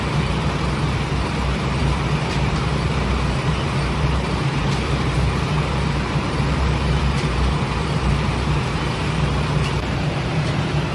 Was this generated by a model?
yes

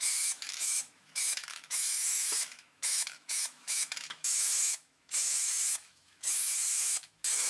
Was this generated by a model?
yes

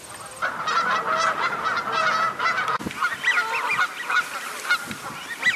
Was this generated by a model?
no